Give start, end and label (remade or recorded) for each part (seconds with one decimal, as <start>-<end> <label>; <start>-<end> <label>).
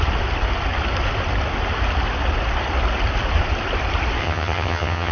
0.0-4.2 recorded; 4.2-5.1 remade